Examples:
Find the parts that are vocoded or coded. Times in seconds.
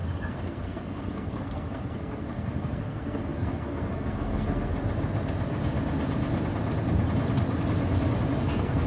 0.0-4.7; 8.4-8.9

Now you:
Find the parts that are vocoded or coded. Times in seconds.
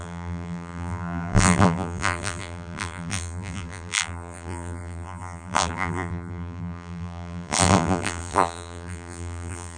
0.0-9.8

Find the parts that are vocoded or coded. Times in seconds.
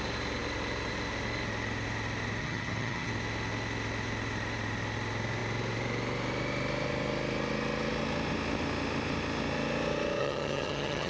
2.4-3.1; 10.2-11.1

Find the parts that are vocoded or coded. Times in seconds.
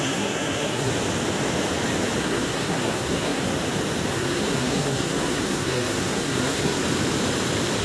0.0-0.9; 2.2-3.5; 4.1-6.8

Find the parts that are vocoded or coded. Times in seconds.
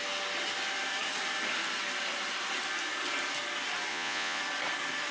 3.9-4.4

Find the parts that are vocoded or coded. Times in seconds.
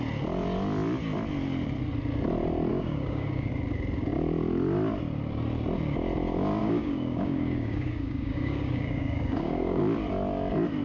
2.7-3.5; 6.6-9.8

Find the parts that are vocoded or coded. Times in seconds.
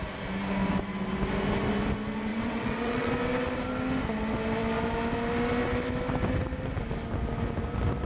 2.3-3.1